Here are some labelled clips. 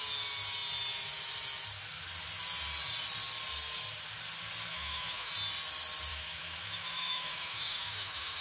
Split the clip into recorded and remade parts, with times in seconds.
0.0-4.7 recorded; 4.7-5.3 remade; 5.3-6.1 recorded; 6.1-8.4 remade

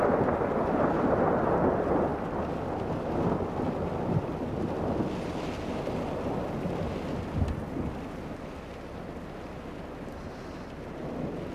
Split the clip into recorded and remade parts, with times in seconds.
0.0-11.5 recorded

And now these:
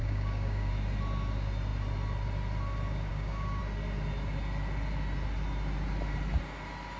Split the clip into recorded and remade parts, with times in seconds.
0.0-0.7 remade; 0.7-3.1 recorded; 3.1-3.6 remade; 3.6-7.0 recorded

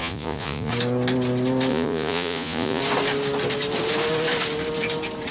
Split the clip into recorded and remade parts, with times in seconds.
0.0-0.7 remade; 0.7-1.7 recorded; 1.7-2.8 remade; 2.8-5.3 recorded

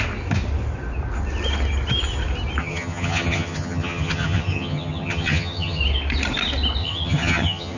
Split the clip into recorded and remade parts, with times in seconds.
0.0-2.6 recorded; 2.6-5.8 remade; 5.8-6.8 recorded; 6.8-7.8 remade